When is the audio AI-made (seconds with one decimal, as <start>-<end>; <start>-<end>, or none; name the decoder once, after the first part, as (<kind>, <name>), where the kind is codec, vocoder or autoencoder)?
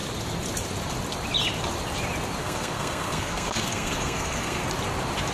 2.4-4.6 (codec, SNAC)